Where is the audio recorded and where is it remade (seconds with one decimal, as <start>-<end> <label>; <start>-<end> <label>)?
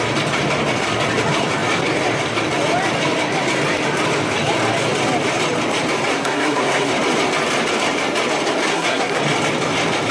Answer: 0.0-6.1 recorded; 6.1-6.9 remade; 6.9-8.7 recorded; 8.7-9.2 remade; 9.2-10.1 recorded